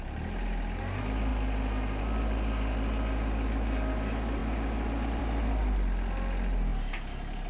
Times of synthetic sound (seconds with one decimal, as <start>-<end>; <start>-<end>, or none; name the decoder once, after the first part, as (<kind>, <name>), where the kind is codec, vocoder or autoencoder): none